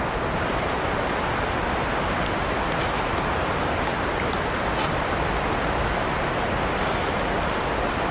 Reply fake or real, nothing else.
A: real